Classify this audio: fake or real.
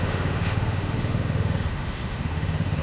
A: fake